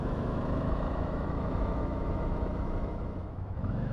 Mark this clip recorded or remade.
remade